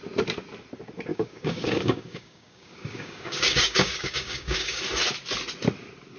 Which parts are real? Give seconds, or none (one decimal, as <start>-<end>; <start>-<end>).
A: 0.0-1.1; 4.8-6.2